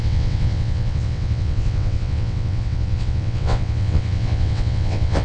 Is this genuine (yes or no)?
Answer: no